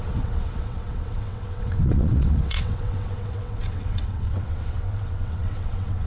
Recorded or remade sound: remade